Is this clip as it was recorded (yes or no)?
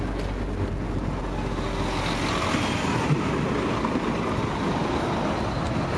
yes